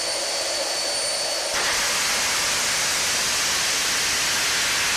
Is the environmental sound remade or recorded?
recorded